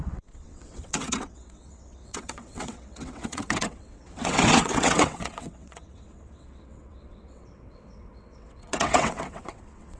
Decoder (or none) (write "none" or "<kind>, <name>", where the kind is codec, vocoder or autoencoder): vocoder, WaveNeXt